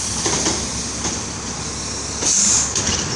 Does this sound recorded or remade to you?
recorded